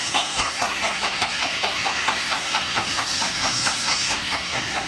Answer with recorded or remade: remade